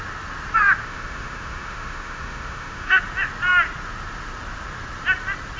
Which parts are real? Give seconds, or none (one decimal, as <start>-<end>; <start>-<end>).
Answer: 0.0-0.8; 3.0-5.6